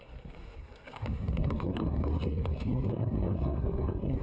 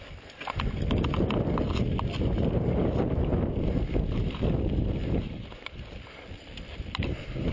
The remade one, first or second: first